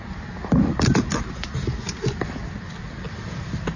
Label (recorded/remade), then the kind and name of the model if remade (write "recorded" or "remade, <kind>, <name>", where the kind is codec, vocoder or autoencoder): remade, vocoder, BigVGAN v2